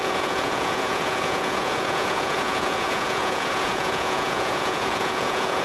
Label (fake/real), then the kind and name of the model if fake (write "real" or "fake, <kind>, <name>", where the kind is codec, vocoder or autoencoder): fake, vocoder, Vocos